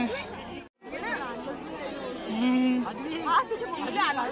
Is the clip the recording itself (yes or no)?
yes